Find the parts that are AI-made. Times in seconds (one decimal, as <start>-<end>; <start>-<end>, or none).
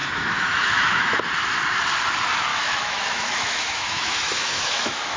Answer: 0.0-1.2; 2.5-5.2